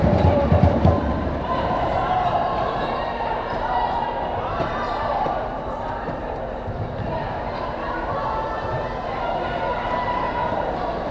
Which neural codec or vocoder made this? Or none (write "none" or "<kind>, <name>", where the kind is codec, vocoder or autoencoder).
vocoder, BigVGAN v2